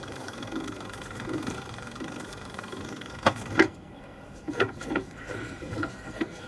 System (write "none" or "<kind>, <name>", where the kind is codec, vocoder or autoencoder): codec, SNAC